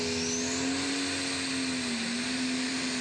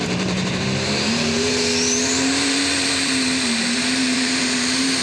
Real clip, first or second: first